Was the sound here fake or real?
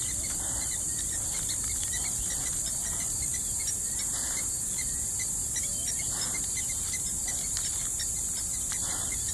real